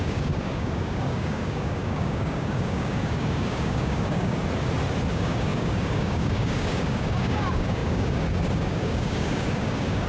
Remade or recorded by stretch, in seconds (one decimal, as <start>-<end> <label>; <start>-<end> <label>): 0.0-4.4 remade; 4.4-5.1 recorded; 5.1-10.1 remade